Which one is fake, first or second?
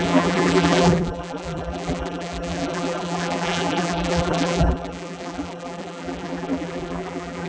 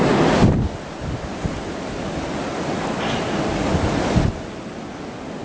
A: first